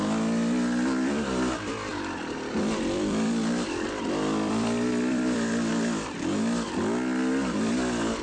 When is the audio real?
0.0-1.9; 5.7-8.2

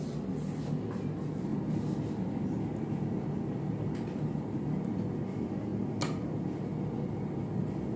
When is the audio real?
0.0-8.0

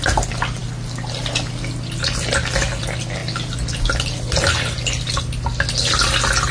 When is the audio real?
0.0-6.5

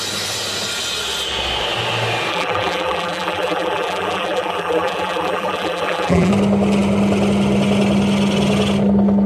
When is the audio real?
0.0-2.3; 6.3-9.3

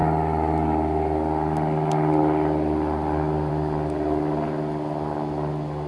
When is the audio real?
0.0-5.9